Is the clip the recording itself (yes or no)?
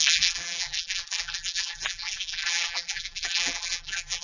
no